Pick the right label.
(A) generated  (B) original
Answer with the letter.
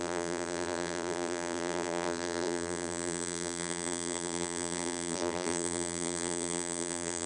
A